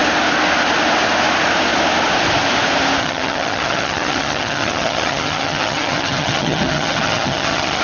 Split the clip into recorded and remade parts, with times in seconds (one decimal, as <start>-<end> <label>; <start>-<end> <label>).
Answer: 0.0-3.0 recorded; 3.0-7.8 remade